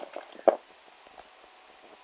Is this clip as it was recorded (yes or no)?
yes